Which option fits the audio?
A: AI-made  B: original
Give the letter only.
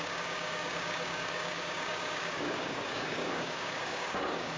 A